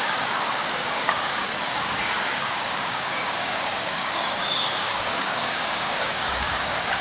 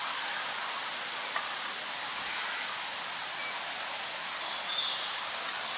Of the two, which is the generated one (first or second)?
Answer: first